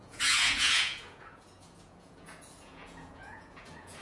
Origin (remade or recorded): remade